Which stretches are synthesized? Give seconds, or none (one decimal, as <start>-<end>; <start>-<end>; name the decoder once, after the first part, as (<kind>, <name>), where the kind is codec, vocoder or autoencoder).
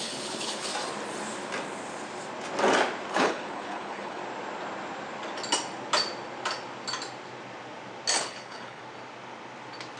0.0-0.7 (codec, HILCodec); 3.1-4.2; 8.2-8.8